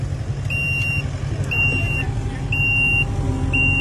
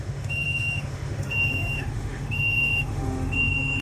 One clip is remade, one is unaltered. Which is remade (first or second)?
second